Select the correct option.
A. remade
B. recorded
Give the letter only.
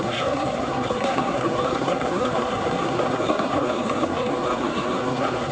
A